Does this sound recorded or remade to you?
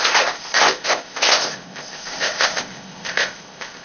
remade